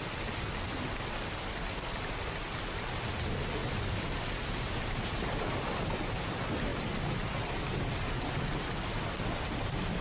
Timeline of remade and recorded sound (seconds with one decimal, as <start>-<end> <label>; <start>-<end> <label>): 0.0-3.6 recorded; 3.6-5.6 remade; 5.6-6.7 recorded; 6.7-7.8 remade; 7.8-10.0 recorded